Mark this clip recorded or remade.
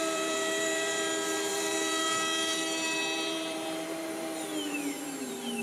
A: remade